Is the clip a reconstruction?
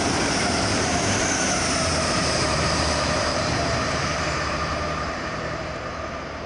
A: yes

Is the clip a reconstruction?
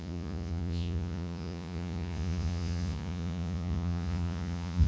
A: yes